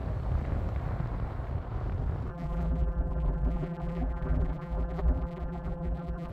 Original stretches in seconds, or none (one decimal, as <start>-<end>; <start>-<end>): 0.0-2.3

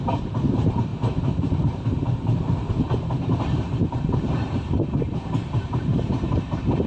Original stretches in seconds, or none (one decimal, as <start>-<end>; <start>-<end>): none

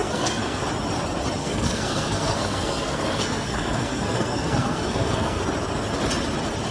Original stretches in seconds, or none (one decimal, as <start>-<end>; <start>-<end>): 0.6-1.4; 5.4-6.7